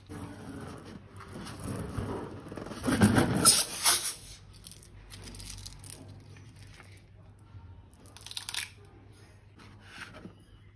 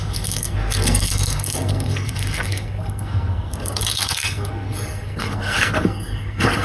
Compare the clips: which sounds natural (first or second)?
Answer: first